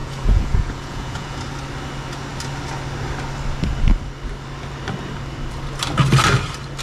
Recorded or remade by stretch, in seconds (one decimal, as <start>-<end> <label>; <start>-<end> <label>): 0.0-1.4 remade; 1.4-6.8 recorded